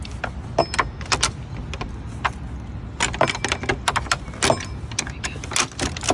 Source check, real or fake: real